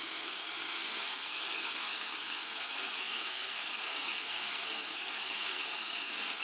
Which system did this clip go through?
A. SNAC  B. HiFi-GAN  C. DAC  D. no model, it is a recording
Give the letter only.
A